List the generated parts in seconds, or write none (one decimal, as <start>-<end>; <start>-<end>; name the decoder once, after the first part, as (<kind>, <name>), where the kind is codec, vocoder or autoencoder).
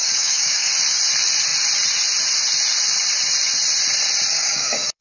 0.0-0.7 (codec, DAC); 4.3-5.0